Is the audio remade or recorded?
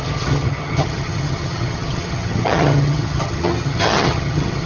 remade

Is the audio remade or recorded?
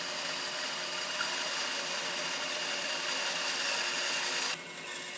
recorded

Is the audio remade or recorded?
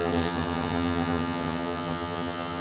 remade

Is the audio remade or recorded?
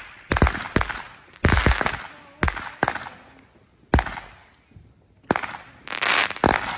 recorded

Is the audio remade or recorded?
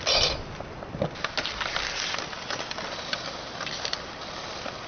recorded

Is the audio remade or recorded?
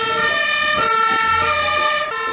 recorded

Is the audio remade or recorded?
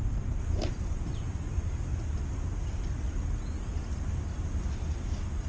recorded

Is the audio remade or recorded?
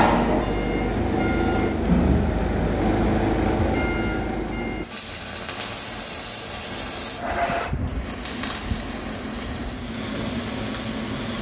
recorded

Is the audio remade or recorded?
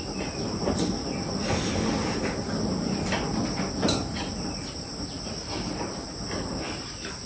recorded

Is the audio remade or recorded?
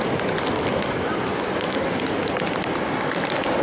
recorded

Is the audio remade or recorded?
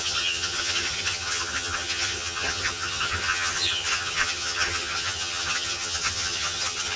remade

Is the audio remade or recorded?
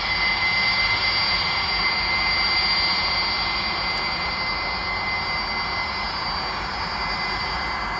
recorded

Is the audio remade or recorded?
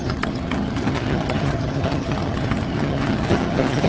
remade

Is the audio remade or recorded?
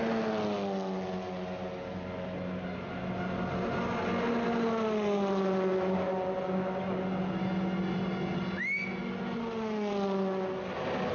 recorded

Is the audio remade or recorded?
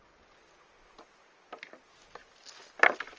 recorded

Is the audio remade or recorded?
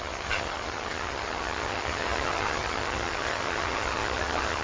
remade